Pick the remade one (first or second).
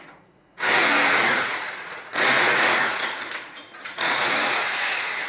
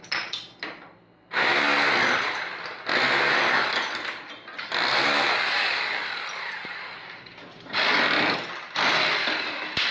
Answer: first